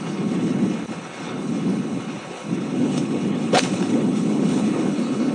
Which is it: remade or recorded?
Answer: remade